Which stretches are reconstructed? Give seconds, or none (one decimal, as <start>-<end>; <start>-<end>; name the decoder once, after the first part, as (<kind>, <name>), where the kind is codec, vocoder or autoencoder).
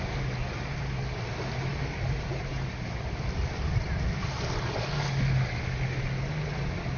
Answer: none